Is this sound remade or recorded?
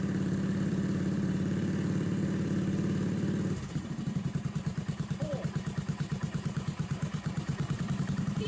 remade